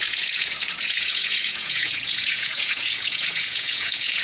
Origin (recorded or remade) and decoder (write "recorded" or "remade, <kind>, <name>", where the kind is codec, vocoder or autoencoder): remade, vocoder, Vocos